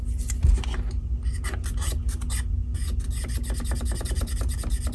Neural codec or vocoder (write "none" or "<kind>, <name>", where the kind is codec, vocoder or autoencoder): none